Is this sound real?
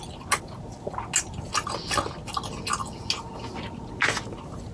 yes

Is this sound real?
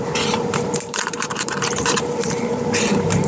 no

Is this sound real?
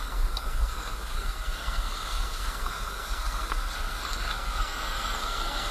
no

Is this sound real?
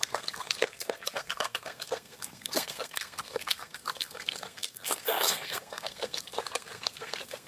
no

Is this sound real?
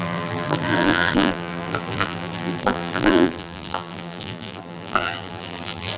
no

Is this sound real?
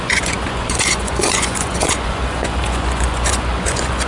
no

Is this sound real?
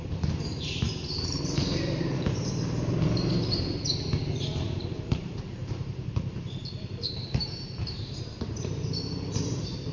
no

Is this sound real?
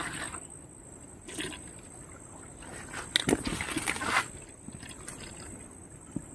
yes